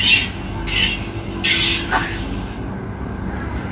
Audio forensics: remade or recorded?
recorded